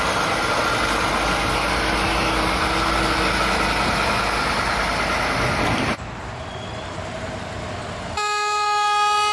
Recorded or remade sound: recorded